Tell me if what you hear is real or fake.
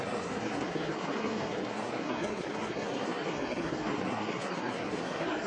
fake